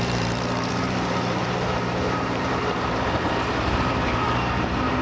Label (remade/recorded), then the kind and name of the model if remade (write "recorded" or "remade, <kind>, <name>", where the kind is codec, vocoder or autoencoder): remade, vocoder, BigVGAN v2